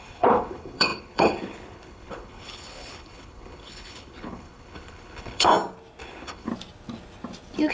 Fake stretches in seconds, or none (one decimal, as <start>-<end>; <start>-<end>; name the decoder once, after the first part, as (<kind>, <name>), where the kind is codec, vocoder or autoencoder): 0.0-5.5 (codec, HILCodec); 6.0-6.5